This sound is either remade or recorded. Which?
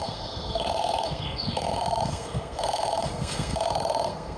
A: remade